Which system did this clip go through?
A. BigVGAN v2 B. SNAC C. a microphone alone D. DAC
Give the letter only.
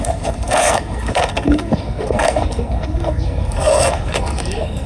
B